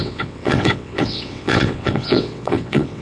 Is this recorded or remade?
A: remade